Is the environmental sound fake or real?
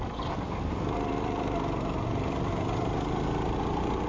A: real